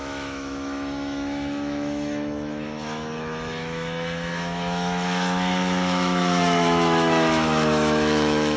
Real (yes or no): no